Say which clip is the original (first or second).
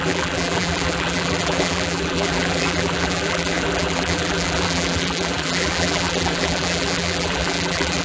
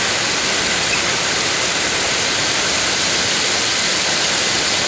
second